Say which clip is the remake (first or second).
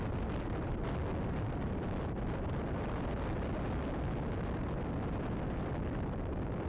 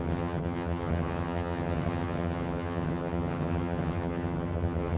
second